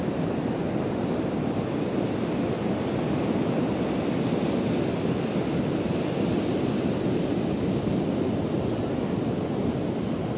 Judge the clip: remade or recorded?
recorded